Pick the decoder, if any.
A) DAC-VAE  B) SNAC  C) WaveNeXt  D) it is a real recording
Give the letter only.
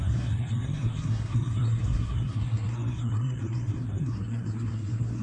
B